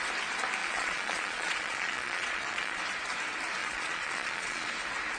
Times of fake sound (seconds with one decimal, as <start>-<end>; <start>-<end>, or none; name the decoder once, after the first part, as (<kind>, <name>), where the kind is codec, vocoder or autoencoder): 0.6-2.8 (vocoder, Vocos); 3.6-4.7